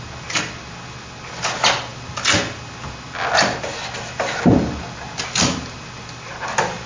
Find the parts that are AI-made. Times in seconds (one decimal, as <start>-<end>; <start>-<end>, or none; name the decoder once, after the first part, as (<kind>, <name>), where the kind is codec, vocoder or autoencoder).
none